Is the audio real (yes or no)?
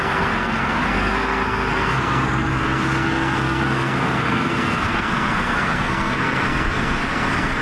no